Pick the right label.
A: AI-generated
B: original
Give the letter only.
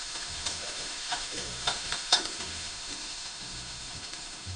A